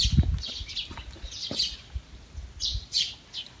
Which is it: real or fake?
real